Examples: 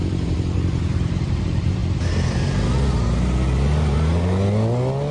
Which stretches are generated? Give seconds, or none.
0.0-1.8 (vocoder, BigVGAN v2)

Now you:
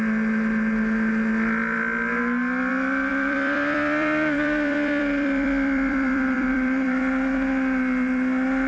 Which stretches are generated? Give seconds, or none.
3.1-7.0 (vocoder, BigVGAN v2)

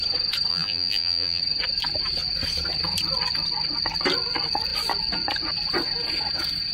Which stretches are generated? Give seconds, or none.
0.5-1.4 (vocoder, BigVGAN v2)